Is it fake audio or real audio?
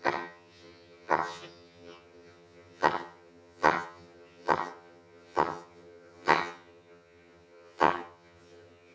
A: fake